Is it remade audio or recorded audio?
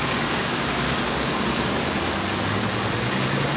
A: remade